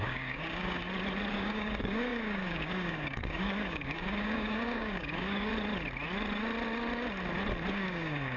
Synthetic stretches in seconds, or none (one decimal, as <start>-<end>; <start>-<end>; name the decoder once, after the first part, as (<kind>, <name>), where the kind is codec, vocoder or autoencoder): 0.0-0.8 (codec, DAC); 1.3-5.5; 7.7-8.4